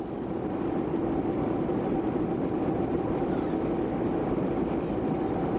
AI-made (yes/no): no